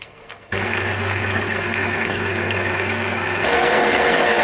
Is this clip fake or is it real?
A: fake